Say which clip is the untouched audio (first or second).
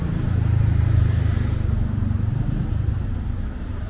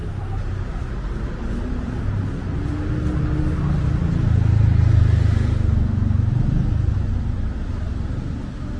second